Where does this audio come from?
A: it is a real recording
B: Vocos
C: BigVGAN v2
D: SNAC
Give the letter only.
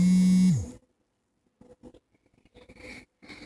A